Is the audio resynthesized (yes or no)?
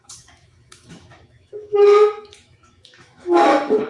yes